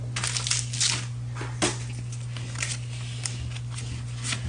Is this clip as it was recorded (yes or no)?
yes